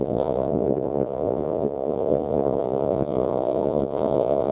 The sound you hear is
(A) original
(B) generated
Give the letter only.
B